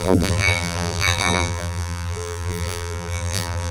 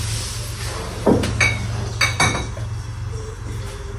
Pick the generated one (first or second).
first